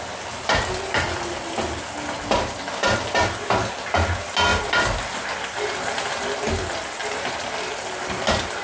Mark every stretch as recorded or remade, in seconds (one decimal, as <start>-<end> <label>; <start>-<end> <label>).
0.0-8.6 recorded